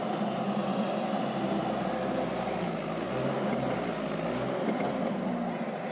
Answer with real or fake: real